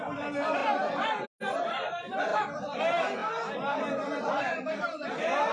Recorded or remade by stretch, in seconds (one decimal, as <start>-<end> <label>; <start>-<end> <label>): 0.0-2.3 recorded; 2.3-2.8 remade; 2.8-5.5 recorded